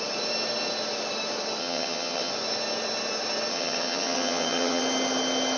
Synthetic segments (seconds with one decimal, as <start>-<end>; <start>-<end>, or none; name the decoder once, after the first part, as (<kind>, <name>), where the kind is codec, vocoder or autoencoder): 1.6-2.3 (vocoder, HiFi-GAN); 3.5-4.8